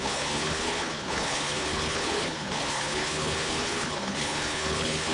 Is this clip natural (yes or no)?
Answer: no